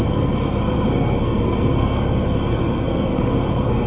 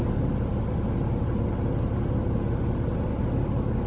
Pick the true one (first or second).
second